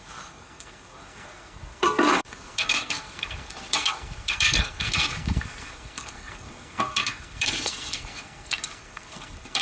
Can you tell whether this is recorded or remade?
remade